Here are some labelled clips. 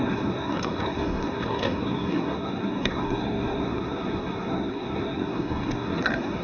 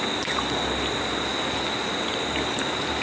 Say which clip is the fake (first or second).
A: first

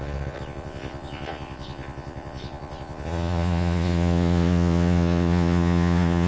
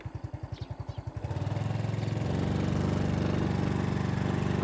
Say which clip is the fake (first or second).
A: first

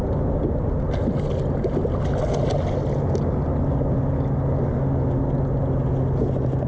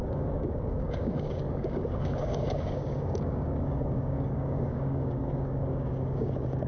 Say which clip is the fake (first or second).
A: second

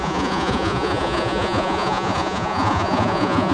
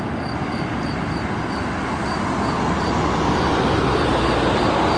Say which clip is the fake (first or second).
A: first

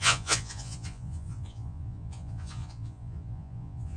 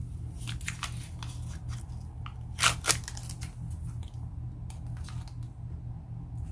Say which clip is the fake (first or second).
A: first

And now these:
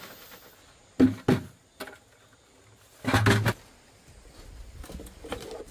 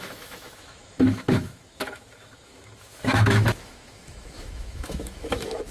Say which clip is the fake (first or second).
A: second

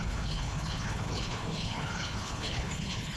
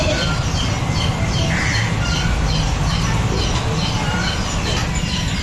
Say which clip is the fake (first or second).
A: first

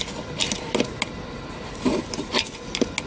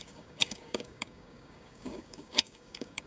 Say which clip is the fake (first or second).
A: second